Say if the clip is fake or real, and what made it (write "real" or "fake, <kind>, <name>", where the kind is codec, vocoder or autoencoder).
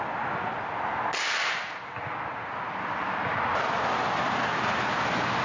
real